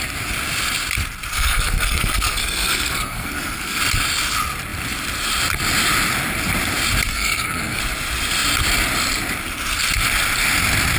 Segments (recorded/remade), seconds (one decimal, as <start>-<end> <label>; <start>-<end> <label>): 0.0-1.3 recorded; 1.3-3.8 remade; 3.8-7.1 recorded; 7.1-7.8 remade; 7.8-11.0 recorded